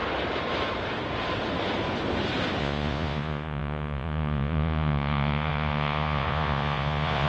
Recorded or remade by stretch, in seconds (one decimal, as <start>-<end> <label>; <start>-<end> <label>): 0.0-2.6 recorded; 2.6-7.3 remade